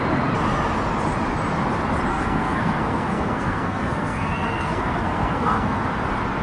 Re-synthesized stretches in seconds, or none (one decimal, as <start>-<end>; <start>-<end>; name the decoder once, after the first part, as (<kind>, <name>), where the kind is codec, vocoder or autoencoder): 2.1-5.8 (codec, SNAC)